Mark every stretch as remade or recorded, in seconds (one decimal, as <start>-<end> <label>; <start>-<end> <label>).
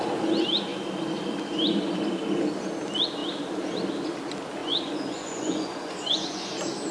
0.0-4.6 recorded; 4.6-6.5 remade; 6.5-6.9 recorded